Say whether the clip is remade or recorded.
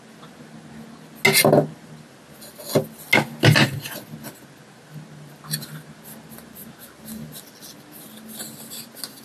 recorded